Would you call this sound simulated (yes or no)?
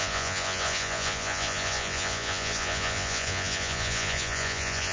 yes